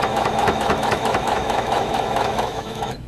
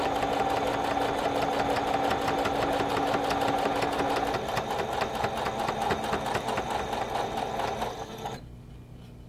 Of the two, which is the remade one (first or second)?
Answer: first